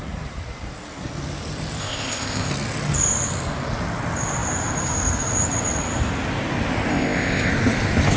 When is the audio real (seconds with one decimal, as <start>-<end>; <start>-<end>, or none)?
0.0-1.8; 2.5-6.9; 7.5-8.2